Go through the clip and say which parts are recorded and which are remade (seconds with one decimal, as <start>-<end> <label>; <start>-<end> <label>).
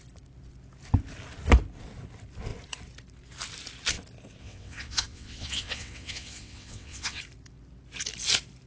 0.0-4.4 recorded; 4.4-7.2 remade; 7.2-8.7 recorded